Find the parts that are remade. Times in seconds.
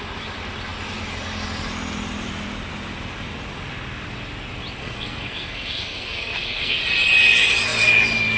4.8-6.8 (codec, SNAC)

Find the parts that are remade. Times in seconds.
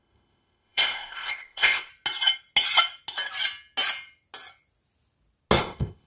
0.0-1.9 (codec, ZipCodec); 5.6-6.1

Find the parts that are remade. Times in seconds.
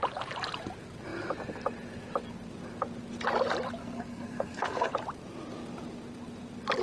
3.8-4.9 (codec, SNAC)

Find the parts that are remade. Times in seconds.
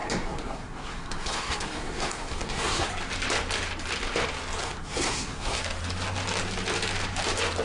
0.0-2.9 (codec, SNAC); 4.6-5.6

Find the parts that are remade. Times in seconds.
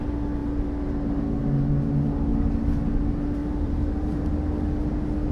3.4-4.3 (vocoder, BigVGAN v2)